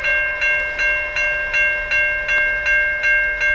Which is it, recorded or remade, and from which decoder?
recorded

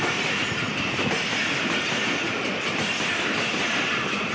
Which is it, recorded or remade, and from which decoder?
recorded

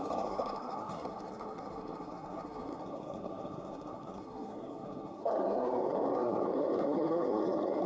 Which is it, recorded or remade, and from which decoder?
remade, codec, SNAC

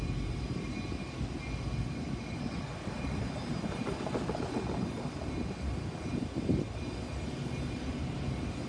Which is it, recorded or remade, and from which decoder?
recorded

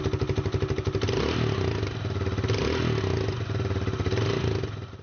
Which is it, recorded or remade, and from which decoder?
recorded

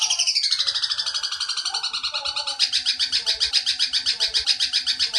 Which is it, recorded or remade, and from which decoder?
recorded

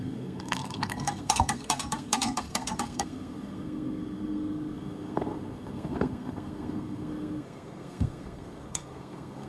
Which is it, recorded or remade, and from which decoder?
remade, codec, SNAC